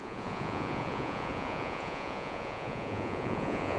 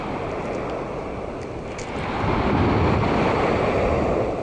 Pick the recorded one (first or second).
second